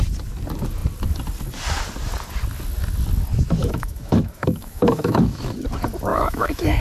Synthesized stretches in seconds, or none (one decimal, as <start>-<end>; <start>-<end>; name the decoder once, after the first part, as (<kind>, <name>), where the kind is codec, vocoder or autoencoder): 3.6-5.6 (autoencoder, DAC-VAE); 6.1-6.8